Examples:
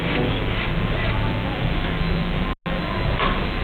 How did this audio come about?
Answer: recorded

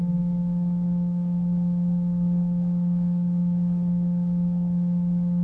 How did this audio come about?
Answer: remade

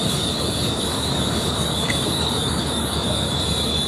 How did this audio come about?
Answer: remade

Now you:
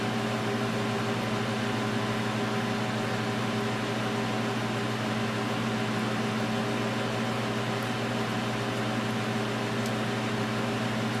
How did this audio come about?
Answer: recorded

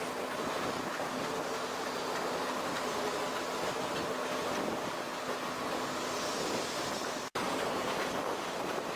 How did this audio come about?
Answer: recorded